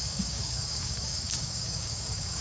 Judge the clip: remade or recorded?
remade